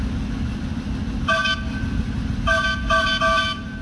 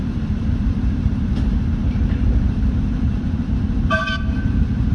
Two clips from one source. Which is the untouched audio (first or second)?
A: first